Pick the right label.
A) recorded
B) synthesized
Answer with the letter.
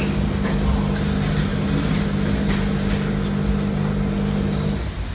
A